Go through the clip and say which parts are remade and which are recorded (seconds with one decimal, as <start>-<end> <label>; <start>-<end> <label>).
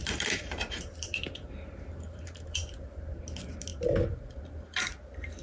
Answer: 0.0-3.2 remade; 3.2-5.4 recorded